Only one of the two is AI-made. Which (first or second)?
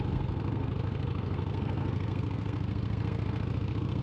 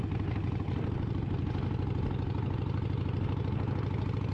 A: first